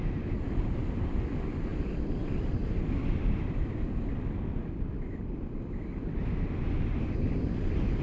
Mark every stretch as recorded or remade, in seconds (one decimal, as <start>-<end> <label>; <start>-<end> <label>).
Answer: 0.0-8.0 recorded